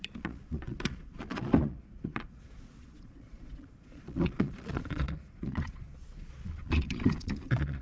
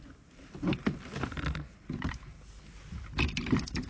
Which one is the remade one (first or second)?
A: first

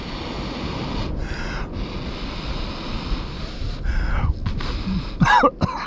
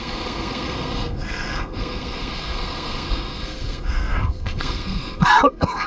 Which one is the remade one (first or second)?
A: second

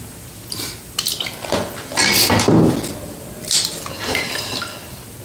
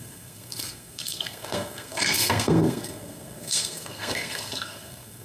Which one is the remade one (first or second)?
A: second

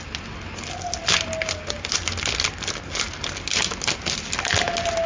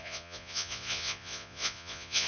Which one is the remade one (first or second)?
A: second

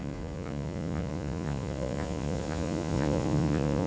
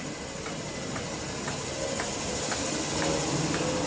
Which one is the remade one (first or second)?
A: first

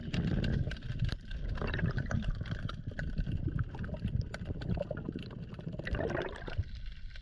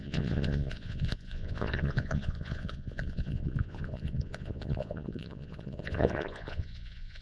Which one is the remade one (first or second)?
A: second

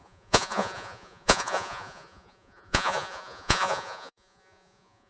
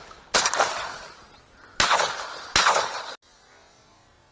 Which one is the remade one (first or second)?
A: first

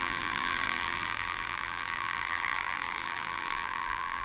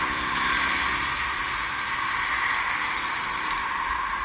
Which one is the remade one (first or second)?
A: first